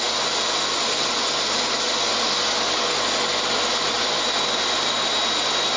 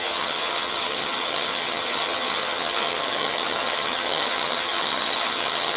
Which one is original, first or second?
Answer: first